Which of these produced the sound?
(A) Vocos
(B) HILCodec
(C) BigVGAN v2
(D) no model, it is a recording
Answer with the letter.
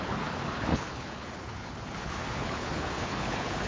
B